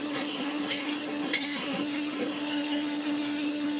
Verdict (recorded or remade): remade